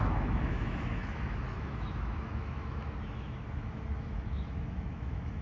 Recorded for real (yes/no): no